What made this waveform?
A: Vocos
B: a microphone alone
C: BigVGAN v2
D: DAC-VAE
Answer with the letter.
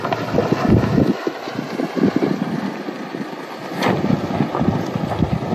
B